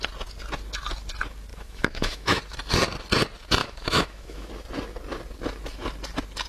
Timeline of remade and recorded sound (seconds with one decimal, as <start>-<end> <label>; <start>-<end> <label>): 0.0-1.5 recorded; 1.5-2.4 remade; 2.4-3.6 recorded; 3.6-4.5 remade; 4.5-6.5 recorded